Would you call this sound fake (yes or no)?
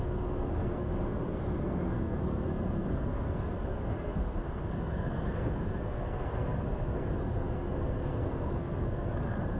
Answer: yes